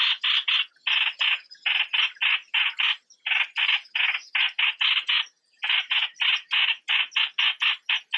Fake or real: real